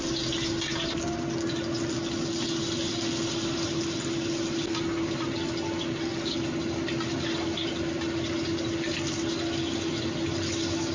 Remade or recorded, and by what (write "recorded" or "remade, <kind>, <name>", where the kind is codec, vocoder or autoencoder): recorded